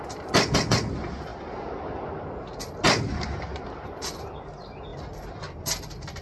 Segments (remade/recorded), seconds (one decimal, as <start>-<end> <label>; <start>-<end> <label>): 0.0-6.2 recorded